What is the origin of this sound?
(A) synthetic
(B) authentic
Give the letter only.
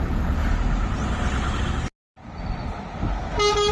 B